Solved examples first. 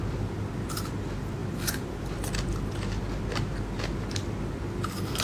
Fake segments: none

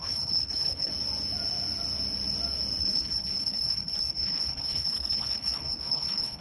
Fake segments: 0.0-0.9; 2.8-6.4

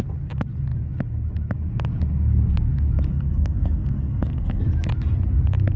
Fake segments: 3.1-4.6

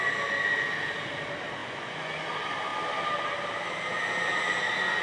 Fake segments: 1.6-2.2

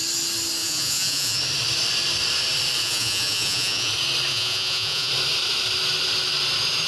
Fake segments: 0.6-1.4; 2.8-3.9; 4.3-5.1

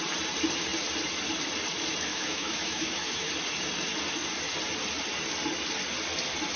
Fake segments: 2.1-3.3

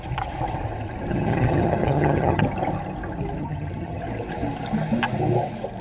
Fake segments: 1.1-2.4; 3.4-4.0